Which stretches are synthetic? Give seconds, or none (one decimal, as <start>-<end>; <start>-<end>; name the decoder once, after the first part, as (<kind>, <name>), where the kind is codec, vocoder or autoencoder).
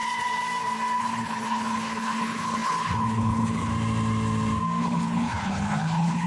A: 1.0-3.7 (codec, HILCodec); 4.8-6.3